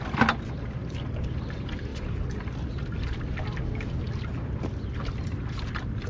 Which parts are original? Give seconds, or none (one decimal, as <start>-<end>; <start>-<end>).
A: 0.0-1.9; 2.4-6.1